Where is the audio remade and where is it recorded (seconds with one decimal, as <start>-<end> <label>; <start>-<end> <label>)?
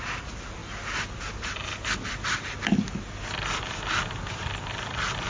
0.0-5.3 recorded